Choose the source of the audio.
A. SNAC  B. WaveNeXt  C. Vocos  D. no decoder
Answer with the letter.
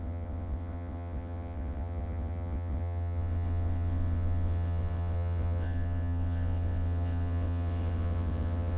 B